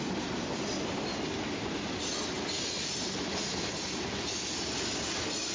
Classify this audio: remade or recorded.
recorded